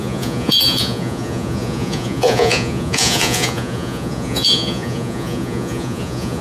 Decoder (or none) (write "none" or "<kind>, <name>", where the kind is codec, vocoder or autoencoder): vocoder, Vocos